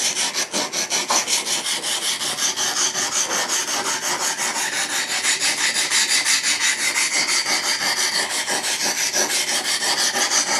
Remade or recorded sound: recorded